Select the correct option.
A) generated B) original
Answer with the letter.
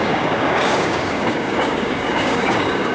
A